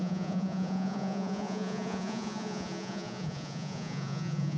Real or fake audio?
fake